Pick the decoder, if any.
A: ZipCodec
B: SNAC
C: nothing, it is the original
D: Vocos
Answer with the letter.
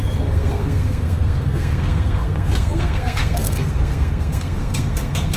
B